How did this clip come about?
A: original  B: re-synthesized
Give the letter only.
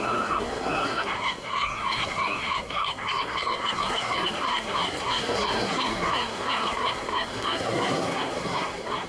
B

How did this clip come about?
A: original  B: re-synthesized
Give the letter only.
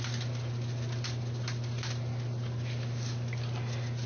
A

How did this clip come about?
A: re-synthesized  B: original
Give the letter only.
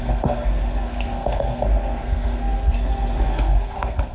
A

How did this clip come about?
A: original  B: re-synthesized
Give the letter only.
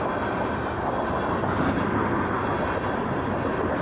A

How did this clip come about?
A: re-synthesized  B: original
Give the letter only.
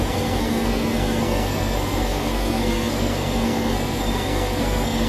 A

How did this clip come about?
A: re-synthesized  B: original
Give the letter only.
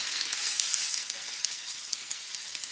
A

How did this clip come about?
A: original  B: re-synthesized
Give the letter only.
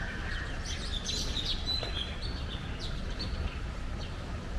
A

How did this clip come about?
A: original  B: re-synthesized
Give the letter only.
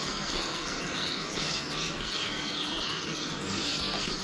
B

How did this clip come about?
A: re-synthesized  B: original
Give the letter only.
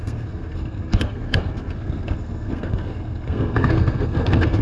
A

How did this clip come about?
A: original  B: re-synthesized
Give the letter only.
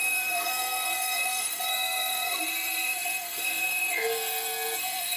B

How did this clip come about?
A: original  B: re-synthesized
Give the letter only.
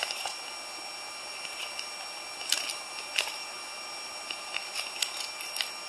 A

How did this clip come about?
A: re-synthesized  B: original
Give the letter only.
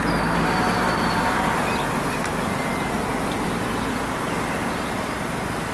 B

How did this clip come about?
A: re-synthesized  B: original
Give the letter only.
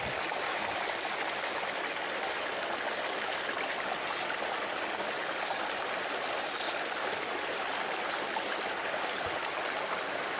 B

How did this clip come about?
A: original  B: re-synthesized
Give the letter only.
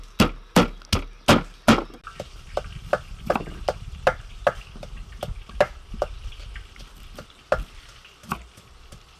A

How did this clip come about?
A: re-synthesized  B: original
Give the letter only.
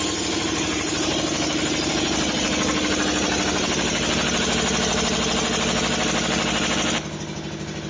B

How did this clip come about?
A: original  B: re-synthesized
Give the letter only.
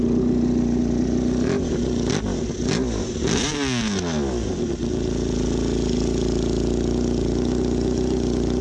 A